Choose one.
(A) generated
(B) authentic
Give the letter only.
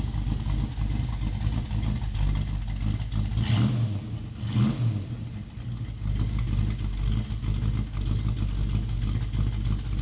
B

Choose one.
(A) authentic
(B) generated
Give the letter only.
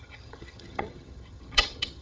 B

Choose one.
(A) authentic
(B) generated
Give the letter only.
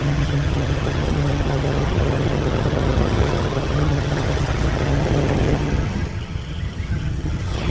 B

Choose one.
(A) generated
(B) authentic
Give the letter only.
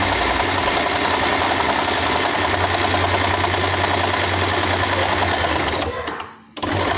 B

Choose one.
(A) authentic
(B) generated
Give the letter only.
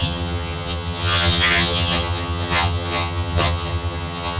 B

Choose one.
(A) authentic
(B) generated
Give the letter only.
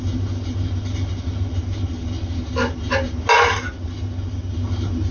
A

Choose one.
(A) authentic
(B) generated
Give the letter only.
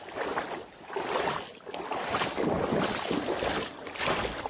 A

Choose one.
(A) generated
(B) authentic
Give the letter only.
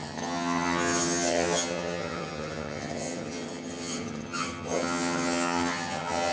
A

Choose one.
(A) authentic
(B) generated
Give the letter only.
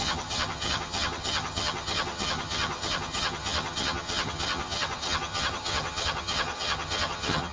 B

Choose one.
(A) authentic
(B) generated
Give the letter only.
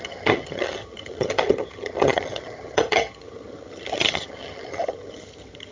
B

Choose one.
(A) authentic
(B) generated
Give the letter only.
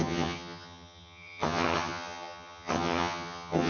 B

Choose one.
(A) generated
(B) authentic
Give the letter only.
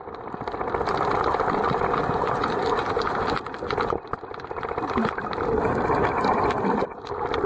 B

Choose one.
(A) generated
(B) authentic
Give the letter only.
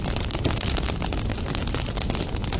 B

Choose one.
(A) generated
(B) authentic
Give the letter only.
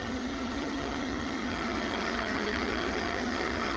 A